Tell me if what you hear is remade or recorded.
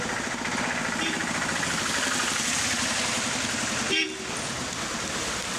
recorded